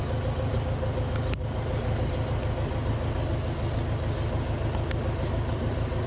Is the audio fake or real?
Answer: real